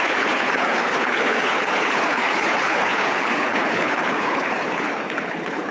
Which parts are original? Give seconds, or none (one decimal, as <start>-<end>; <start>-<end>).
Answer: none